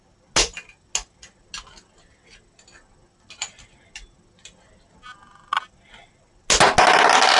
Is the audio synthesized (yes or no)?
no